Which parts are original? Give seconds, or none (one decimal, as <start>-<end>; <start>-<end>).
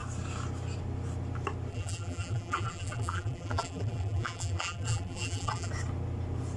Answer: 0.0-1.7; 5.7-6.6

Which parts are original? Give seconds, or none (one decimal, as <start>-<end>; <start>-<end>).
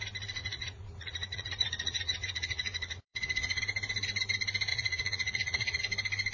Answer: 0.0-0.4; 3.6-4.7; 5.8-6.3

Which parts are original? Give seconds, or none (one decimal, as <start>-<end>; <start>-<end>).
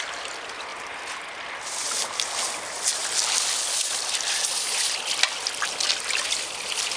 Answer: 0.0-7.0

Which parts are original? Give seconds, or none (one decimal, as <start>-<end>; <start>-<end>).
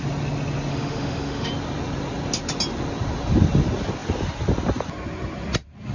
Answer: 0.0-0.7; 1.5-5.9